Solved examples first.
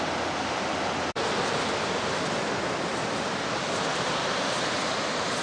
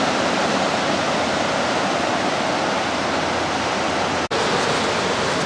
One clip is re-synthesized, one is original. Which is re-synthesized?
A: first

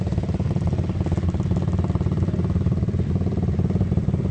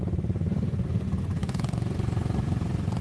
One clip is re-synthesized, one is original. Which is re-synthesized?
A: second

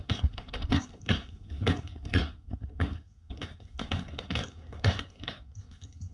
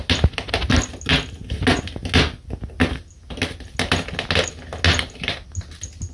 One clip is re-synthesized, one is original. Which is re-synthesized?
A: first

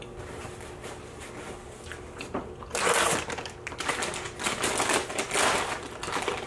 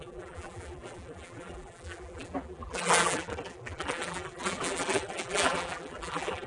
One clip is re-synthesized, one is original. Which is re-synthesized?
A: second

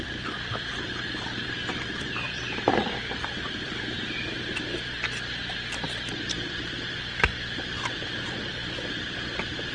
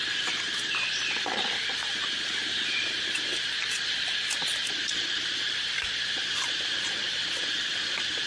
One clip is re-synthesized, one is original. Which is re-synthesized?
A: second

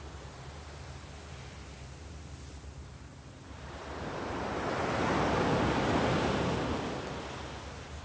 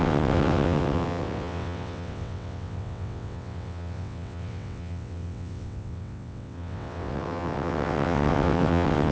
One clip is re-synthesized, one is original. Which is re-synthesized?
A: second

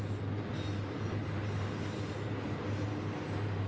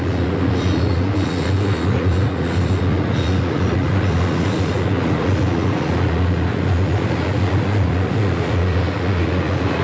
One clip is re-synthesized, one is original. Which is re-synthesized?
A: second